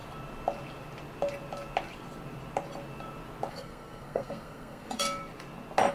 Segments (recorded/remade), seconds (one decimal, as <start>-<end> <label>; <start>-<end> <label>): 0.0-3.5 recorded; 3.5-5.2 remade; 5.2-5.9 recorded